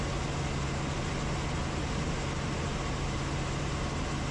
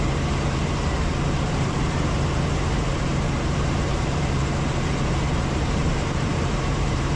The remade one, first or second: second